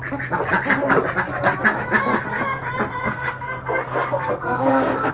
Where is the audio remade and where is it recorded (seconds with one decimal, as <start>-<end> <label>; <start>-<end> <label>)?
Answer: 0.0-3.0 recorded; 3.0-5.1 remade